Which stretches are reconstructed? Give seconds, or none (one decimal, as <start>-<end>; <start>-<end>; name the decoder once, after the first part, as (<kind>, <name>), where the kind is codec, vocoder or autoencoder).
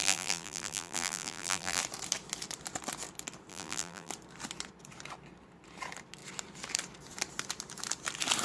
0.0-1.8 (vocoder, BigVGAN v2); 3.5-4.1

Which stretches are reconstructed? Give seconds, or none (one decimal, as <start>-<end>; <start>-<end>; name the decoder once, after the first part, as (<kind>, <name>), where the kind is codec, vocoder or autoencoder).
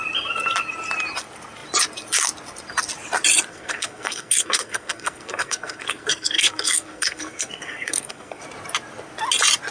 3.5-8.4 (codec, SNAC)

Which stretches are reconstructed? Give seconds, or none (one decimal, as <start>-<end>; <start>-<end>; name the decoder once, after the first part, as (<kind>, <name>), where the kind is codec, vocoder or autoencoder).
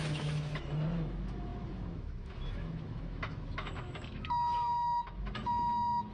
0.0-6.1 (autoencoder, DAC-VAE)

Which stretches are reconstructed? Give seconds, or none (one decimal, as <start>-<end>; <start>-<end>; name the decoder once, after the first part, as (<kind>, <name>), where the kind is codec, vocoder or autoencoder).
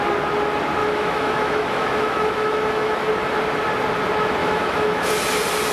0.8-3.1 (autoencoder, DAC-VAE); 4.4-5.1